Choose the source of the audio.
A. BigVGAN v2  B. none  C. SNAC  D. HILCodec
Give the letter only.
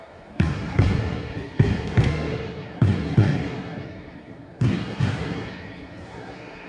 C